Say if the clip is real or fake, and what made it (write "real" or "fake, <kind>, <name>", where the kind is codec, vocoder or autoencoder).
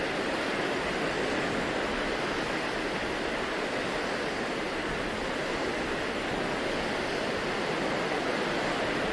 real